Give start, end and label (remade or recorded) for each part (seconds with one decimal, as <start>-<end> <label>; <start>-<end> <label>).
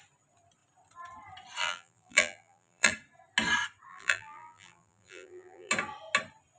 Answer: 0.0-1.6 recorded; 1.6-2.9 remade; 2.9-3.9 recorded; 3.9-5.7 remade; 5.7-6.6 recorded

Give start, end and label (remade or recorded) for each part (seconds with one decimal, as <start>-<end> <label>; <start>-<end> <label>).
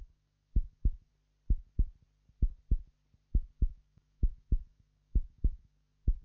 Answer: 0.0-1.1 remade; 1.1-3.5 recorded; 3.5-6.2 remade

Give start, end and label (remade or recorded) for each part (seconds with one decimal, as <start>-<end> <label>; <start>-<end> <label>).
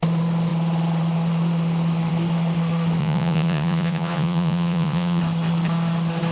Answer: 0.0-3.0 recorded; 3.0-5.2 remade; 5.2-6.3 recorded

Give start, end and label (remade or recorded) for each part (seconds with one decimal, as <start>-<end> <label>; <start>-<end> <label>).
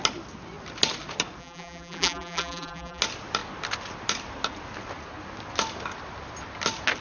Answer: 0.0-1.4 recorded; 1.4-3.0 remade; 3.0-7.0 recorded